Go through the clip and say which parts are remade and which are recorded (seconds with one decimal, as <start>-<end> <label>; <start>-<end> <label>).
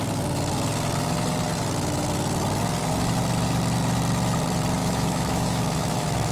0.0-4.8 recorded; 4.8-6.3 remade